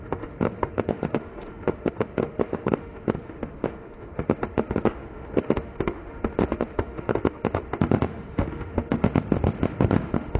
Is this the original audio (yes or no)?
no